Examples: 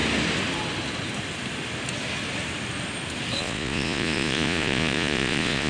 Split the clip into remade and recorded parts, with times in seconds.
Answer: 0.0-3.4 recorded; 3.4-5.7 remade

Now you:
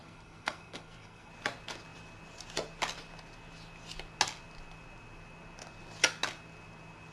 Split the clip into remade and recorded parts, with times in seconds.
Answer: 0.0-1.3 remade; 1.3-7.1 recorded

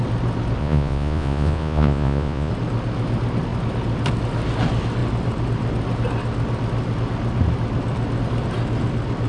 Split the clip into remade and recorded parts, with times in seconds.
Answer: 0.0-0.6 recorded; 0.6-2.5 remade; 2.5-9.3 recorded

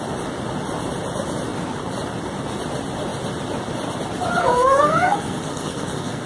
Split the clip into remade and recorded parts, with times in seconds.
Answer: 0.0-4.4 recorded; 4.4-6.3 remade